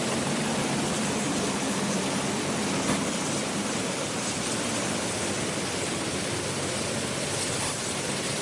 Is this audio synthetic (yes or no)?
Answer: yes